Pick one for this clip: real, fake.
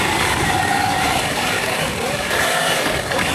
fake